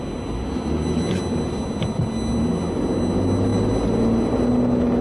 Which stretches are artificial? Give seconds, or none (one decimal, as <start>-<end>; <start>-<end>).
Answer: none

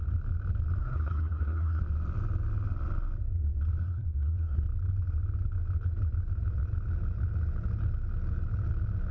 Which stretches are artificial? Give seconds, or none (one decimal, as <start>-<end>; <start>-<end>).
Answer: 0.8-1.8; 3.8-4.6

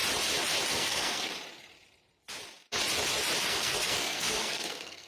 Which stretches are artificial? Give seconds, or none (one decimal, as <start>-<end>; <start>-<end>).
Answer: 0.7-1.3; 3.4-5.1

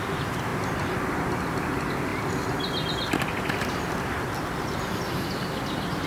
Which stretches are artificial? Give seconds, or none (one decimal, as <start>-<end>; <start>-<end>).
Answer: none

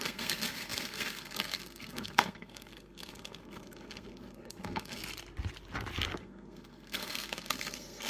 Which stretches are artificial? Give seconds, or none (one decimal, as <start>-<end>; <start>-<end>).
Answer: 0.0-5.0; 6.2-8.1